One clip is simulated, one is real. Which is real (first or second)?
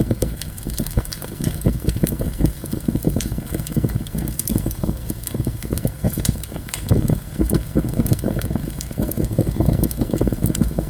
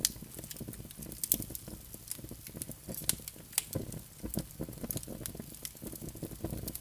second